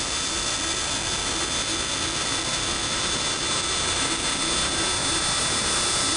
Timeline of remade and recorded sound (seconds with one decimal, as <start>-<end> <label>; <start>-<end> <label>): 0.0-6.2 recorded